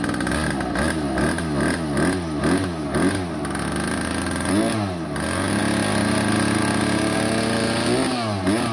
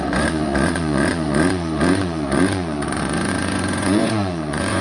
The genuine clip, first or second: first